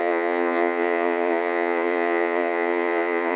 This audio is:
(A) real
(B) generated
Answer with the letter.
B